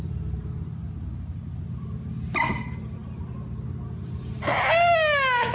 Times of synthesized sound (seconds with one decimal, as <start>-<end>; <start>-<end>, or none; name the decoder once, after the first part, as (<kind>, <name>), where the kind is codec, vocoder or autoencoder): none